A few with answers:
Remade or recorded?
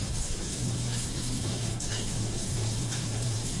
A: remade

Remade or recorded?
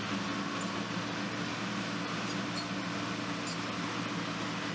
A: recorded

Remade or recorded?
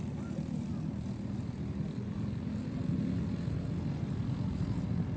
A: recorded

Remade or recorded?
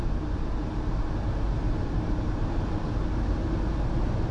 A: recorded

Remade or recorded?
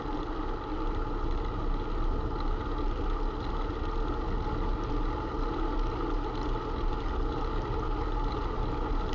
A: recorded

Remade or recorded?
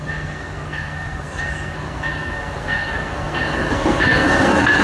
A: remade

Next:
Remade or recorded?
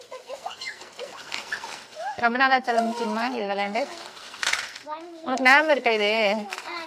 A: remade